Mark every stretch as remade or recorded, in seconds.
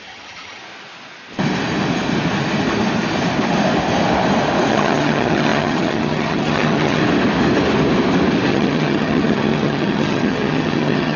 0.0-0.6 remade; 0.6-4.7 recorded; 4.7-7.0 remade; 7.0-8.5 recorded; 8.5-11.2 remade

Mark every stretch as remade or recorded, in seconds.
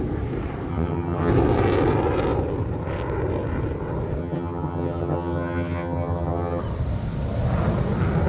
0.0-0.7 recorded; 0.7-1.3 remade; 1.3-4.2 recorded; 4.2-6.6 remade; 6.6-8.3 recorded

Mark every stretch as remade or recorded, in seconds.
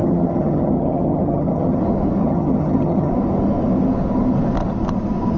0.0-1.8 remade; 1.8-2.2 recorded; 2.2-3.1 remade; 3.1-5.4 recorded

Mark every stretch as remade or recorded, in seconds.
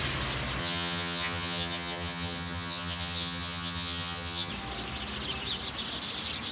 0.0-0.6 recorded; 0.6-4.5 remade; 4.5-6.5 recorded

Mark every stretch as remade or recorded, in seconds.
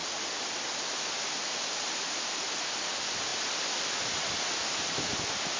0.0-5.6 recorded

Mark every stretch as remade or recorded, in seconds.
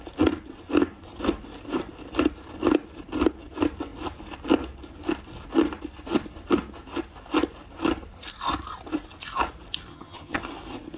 0.0-9.9 recorded; 9.9-10.4 remade; 10.4-11.0 recorded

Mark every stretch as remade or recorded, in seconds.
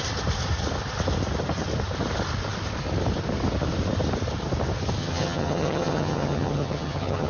0.0-5.0 recorded; 5.0-7.3 remade